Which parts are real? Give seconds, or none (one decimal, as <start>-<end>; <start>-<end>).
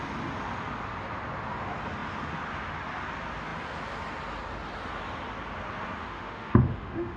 0.0-6.0